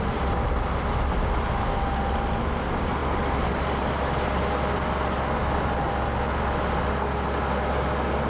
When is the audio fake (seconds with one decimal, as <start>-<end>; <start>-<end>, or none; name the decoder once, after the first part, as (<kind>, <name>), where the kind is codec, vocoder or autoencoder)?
none